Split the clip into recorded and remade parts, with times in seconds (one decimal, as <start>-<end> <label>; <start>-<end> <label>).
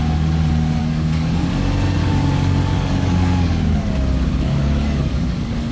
0.0-0.8 recorded; 0.8-1.5 remade; 1.5-2.0 recorded; 2.0-3.9 remade; 3.9-4.3 recorded; 4.3-5.7 remade